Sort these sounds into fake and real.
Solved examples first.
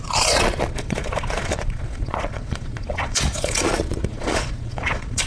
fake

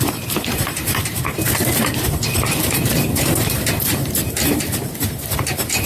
fake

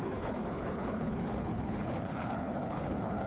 fake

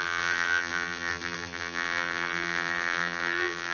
fake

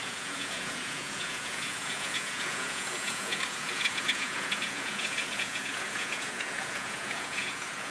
fake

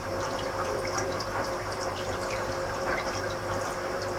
fake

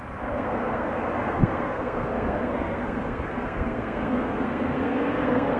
fake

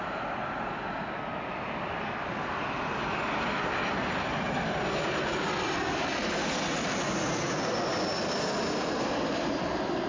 real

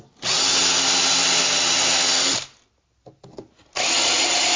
real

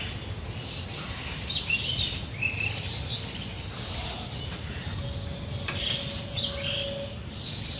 real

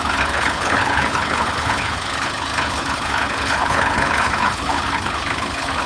fake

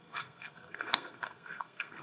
fake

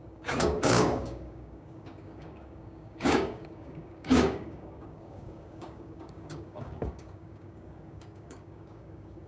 fake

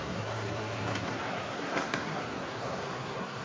fake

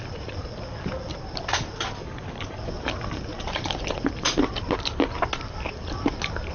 real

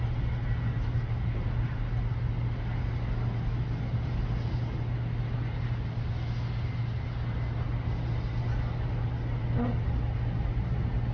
real